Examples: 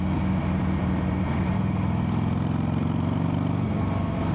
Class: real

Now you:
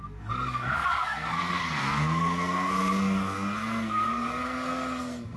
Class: fake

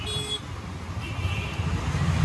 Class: real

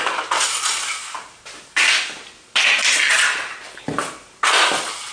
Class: real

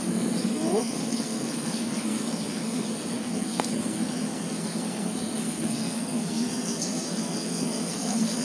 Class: fake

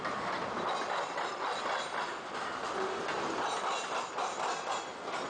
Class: real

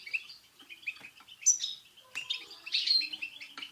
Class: real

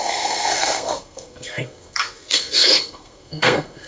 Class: fake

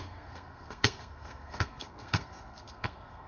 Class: fake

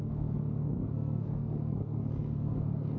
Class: fake